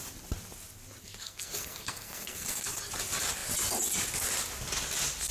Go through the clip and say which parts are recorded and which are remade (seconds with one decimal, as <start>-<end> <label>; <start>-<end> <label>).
0.0-1.0 recorded; 1.0-2.8 remade; 2.8-5.3 recorded

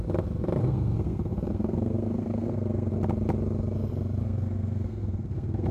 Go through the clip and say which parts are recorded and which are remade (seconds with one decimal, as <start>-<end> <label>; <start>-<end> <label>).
0.0-0.6 recorded; 0.6-2.9 remade; 2.9-4.2 recorded; 4.2-5.7 remade

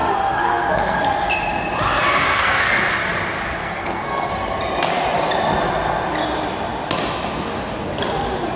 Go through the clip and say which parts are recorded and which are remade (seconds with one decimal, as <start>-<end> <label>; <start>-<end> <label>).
0.0-1.0 remade; 1.0-2.3 recorded; 2.3-2.9 remade; 2.9-3.6 recorded; 3.6-4.3 remade; 4.3-8.6 recorded

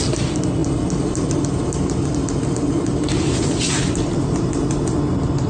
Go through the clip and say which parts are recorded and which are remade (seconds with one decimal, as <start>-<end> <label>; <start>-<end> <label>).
0.0-5.5 recorded

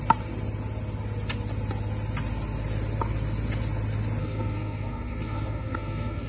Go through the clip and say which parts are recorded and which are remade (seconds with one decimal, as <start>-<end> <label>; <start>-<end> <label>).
0.0-4.2 recorded; 4.2-6.3 remade